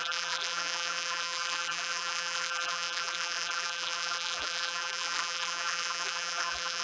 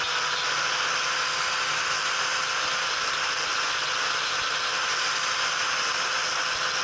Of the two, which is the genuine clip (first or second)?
second